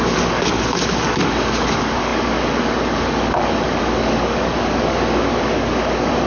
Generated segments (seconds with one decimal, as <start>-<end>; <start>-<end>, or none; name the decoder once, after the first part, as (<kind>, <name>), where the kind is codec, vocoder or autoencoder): 0.0-6.3 (codec, DAC)